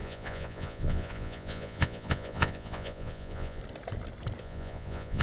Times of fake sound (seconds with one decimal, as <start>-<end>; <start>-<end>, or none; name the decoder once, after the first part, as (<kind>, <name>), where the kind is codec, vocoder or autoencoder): 0.0-3.6 (vocoder, Vocos); 4.4-5.2